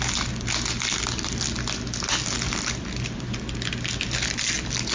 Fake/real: real